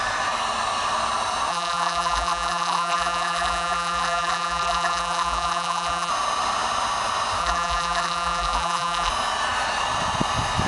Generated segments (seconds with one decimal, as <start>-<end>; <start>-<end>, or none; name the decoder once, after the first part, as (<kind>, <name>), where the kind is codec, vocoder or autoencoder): 1.5-6.1 (vocoder, BigVGAN v2); 7.4-9.1

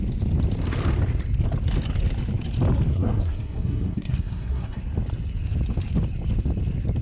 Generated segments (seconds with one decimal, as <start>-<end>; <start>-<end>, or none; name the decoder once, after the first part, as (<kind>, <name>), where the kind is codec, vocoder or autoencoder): 2.9-4.8 (codec, SNAC)

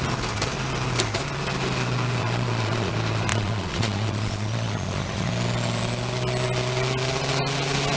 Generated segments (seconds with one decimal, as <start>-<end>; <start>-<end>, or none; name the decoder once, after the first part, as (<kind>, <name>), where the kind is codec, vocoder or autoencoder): 2.2-2.9 (vocoder, Vocos); 3.3-5.3

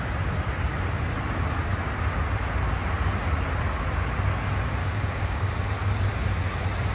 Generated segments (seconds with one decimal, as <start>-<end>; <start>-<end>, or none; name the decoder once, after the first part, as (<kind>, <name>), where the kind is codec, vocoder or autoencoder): 4.8-5.5 (codec, DAC)

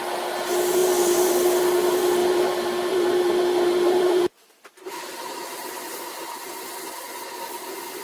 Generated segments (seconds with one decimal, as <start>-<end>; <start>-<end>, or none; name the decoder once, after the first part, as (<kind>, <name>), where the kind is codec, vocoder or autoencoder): 0.8-1.3 (vocoder, BigVGAN v2); 2.2-5.8

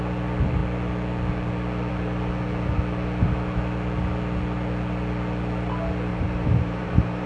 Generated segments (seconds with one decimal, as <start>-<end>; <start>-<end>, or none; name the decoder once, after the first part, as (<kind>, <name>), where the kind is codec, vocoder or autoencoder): 6.1-7.3 (vocoder, BigVGAN v2)

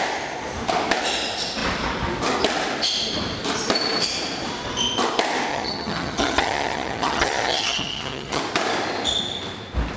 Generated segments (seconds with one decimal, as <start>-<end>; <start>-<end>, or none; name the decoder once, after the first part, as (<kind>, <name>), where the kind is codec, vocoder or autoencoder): 5.5-8.4 (vocoder, HiFi-GAN)